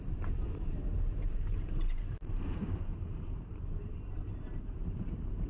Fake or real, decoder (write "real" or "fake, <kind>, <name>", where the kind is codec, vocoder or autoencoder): fake, vocoder, BigVGAN v2